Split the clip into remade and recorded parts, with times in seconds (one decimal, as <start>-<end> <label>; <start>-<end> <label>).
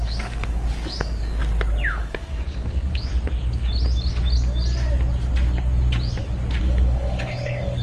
0.0-1.4 remade; 1.4-1.9 recorded; 1.9-3.1 remade; 3.1-6.6 recorded; 6.6-7.8 remade